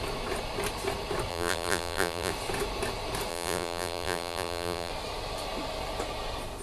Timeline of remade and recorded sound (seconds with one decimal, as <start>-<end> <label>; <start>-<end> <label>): 0.0-1.3 recorded; 1.3-2.3 remade; 2.3-3.3 recorded; 3.3-4.9 remade; 4.9-6.6 recorded